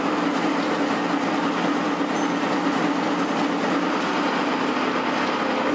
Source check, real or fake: real